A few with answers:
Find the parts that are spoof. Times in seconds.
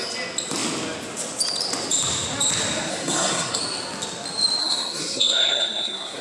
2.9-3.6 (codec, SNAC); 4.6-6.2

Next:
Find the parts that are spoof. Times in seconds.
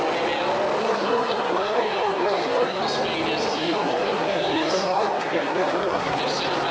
0.8-2.8 (codec, SNAC); 3.5-6.2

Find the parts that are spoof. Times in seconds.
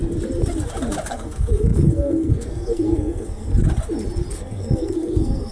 1.1-3.5 (codec, SNAC); 4.3-5.5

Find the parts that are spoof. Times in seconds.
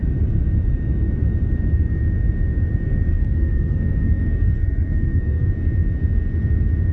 3.1-5.5 (codec, SNAC)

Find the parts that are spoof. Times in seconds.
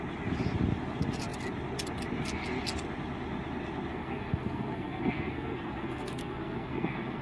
3.9-7.2 (codec, SNAC)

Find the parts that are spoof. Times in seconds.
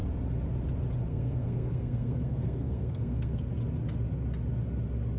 1.1-3.5 (codec, SNAC)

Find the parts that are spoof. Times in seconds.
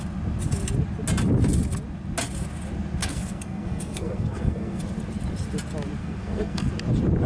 3.0-4.8 (codec, SNAC); 6.0-6.7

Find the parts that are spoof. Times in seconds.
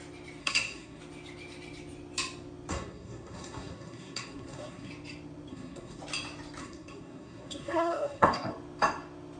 0.4-1.0 (codec, SNAC); 2.7-4.9; 5.5-6.0; 6.6-8.5